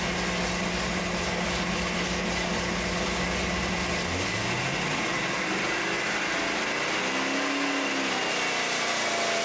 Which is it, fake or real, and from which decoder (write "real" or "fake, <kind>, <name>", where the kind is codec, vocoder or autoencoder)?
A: real